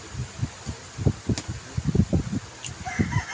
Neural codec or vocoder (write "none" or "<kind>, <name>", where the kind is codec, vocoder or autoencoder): none